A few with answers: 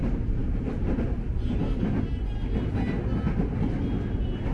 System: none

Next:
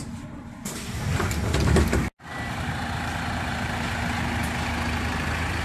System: none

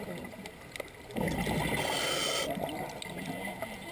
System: none